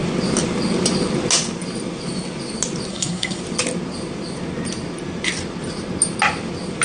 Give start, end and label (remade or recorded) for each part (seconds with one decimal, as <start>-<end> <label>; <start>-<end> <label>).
0.0-2.9 recorded; 2.9-3.4 remade; 3.4-6.8 recorded